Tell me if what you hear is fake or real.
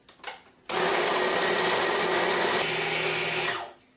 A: real